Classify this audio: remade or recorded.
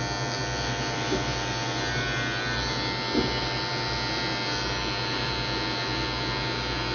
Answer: recorded